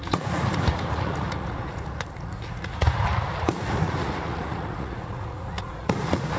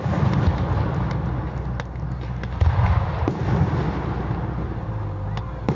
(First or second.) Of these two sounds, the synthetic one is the first